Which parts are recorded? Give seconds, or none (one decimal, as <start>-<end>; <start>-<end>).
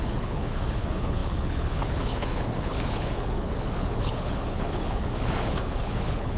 none